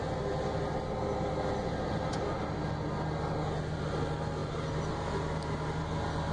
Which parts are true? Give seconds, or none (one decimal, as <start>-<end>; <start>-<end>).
0.0-6.3